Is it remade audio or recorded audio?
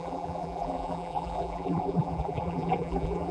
remade